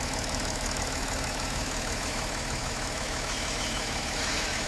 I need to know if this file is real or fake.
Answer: fake